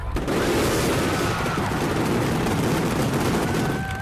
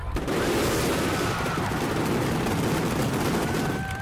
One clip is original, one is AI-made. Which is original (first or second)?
first